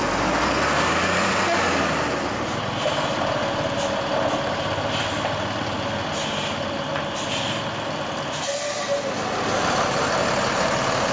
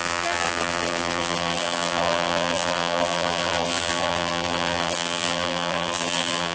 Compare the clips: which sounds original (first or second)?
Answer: first